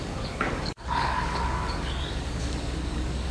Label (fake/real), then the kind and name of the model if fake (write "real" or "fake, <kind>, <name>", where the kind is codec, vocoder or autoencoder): fake, codec, DAC